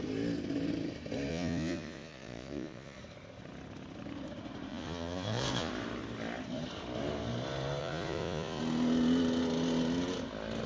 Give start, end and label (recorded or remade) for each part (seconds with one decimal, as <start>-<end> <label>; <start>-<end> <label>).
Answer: 0.0-1.3 recorded; 1.3-3.0 remade; 3.0-4.7 recorded; 4.7-5.7 remade; 5.7-7.8 recorded; 7.8-8.6 remade; 8.6-10.7 recorded